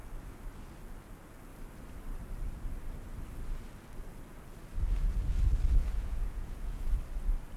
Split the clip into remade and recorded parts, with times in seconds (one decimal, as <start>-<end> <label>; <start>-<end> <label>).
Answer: 0.0-5.8 recorded; 5.8-6.8 remade; 6.8-7.6 recorded